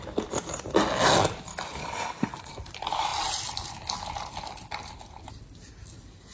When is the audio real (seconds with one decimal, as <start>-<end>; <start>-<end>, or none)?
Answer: 0.0-1.8; 2.3-6.3